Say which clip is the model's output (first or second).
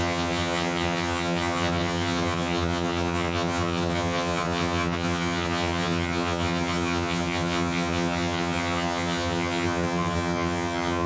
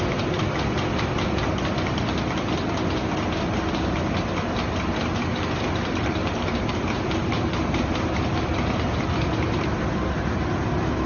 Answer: first